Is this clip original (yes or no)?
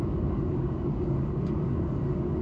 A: no